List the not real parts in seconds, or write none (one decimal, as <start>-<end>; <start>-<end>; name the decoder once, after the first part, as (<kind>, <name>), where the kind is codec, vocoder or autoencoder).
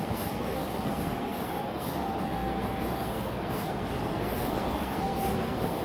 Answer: 0.0-5.8 (codec, SNAC)